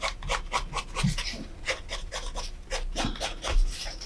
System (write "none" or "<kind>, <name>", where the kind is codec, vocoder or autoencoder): none